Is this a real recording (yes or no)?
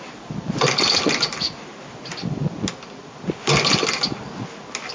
yes